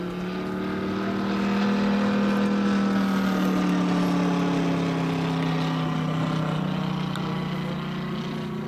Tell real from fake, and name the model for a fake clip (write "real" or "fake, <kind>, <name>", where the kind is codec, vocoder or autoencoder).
real